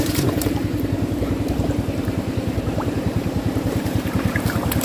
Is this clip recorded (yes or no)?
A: no